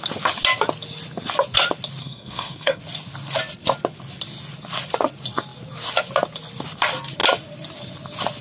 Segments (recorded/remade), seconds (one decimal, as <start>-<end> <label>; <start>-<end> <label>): 0.0-2.0 recorded; 2.0-2.8 remade; 2.8-8.4 recorded